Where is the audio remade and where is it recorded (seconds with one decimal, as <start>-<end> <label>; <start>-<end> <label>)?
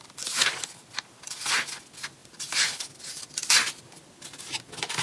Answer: 0.0-2.2 recorded; 2.2-3.7 remade; 3.7-5.0 recorded